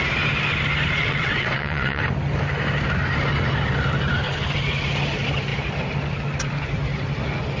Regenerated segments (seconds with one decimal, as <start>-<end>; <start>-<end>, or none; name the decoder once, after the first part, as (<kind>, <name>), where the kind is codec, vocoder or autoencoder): 1.0-2.0 (vocoder, WaveNeXt)